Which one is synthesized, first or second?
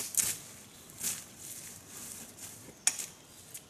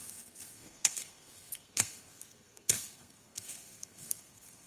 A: second